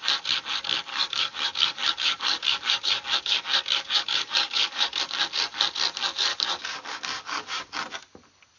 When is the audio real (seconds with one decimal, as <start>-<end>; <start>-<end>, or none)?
0.0-0.9; 5.0-6.3; 7.8-8.6